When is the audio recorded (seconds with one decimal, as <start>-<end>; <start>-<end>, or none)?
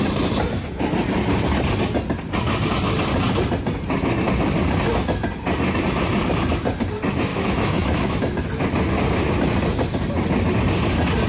0.0-7.3; 8.2-11.3